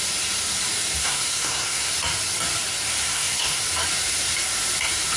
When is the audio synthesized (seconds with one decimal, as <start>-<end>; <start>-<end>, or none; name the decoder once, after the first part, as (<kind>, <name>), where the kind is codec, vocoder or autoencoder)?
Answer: 1.0-1.9 (codec, SNAC); 3.0-3.6